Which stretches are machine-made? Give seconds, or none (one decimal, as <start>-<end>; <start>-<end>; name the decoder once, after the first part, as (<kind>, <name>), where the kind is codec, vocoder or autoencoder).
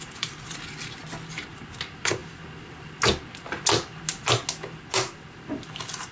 none